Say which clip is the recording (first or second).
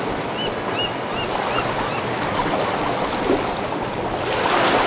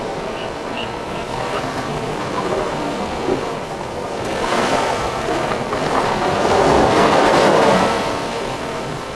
first